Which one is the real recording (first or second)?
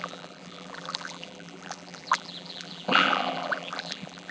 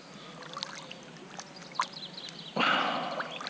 second